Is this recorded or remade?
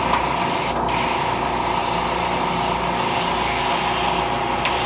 recorded